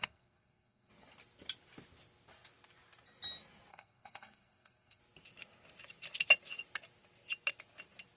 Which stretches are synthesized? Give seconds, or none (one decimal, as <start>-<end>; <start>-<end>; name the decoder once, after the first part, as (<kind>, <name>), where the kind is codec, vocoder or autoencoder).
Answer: 0.0-0.9 (codec, SNAC); 3.7-5.0